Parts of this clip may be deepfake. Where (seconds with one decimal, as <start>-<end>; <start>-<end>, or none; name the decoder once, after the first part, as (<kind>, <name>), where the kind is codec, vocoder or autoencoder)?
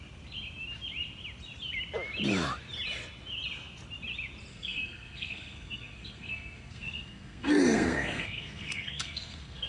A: 4.5-9.7 (codec, SNAC)